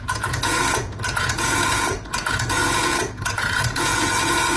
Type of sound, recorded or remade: remade